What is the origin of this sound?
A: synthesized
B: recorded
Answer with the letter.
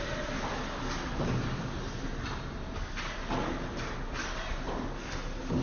A